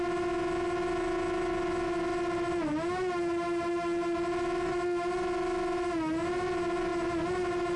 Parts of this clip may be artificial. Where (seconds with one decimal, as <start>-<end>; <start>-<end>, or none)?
none